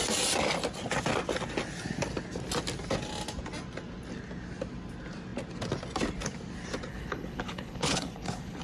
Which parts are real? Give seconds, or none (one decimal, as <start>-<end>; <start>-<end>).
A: 0.0-6.9